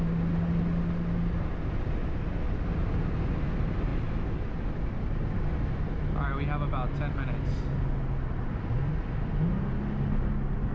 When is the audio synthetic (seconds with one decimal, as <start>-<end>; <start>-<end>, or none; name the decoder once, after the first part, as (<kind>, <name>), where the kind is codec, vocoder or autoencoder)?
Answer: none